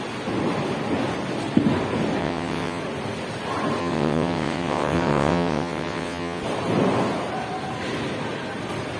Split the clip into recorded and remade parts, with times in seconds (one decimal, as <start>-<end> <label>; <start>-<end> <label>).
0.0-2.2 recorded; 2.2-2.8 remade; 2.8-3.8 recorded; 3.8-6.4 remade; 6.4-9.0 recorded